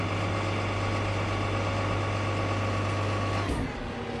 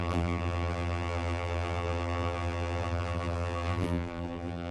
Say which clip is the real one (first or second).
first